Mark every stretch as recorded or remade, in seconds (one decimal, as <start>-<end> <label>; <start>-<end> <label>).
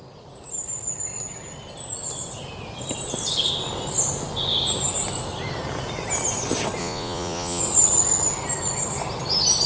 0.0-6.8 recorded; 6.8-7.6 remade; 7.6-9.7 recorded